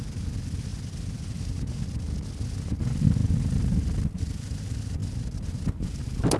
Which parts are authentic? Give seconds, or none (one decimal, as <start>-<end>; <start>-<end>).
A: 0.7-2.8; 3.2-4.3